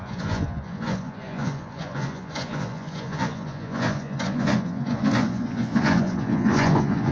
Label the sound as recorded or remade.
remade